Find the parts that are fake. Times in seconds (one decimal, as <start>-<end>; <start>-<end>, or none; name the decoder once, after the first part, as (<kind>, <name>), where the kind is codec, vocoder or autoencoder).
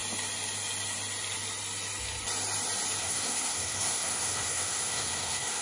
3.0-5.6 (codec, SNAC)